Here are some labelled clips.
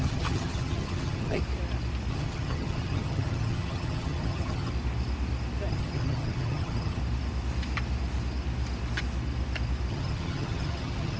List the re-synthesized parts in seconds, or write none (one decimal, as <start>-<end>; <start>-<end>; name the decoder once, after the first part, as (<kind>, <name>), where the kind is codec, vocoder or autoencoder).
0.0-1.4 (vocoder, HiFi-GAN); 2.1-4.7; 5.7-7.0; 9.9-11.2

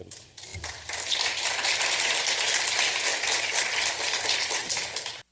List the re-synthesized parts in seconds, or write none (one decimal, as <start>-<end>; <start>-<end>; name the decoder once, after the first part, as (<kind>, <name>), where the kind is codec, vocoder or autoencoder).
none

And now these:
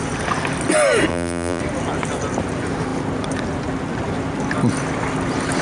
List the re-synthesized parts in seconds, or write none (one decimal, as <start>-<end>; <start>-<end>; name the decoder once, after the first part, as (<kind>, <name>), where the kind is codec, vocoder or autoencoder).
1.1-1.6 (vocoder, BigVGAN v2)

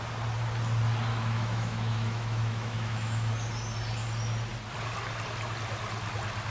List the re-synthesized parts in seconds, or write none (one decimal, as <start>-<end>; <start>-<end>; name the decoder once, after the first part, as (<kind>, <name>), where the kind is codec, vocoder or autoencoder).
1.1-3.3 (autoencoder, DAC-VAE)

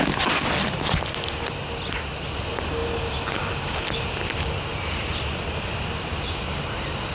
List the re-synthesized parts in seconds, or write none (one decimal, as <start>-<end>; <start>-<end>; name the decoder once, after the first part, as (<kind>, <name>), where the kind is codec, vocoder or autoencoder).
none